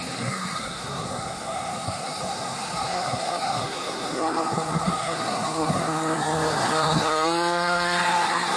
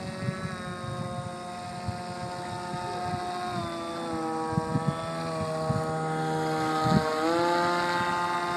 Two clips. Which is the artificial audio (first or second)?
first